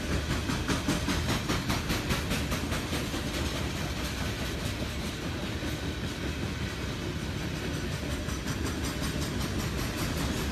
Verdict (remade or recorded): recorded